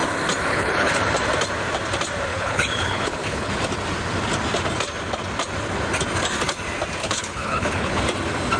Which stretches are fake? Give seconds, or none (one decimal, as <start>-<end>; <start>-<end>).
0.5-1.0; 2.3-3.5; 7.0-8.0

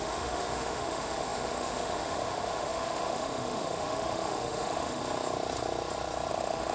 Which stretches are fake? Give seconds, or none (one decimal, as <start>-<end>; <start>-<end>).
0.0-5.0; 6.3-6.7

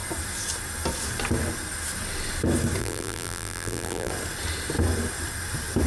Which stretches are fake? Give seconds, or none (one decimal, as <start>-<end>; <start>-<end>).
2.8-4.1

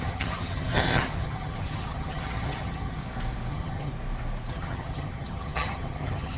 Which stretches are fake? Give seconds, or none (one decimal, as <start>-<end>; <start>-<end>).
0.0-3.0; 3.5-3.9; 4.5-6.4

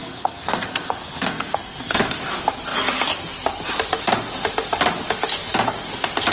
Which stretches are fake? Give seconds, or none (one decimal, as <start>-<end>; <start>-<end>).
0.0-2.2